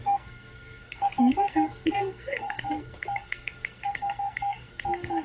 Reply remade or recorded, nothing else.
remade